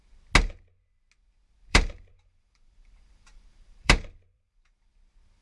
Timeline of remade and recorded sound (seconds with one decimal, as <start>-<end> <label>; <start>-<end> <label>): 0.0-1.7 recorded; 1.7-4.9 remade; 4.9-5.4 recorded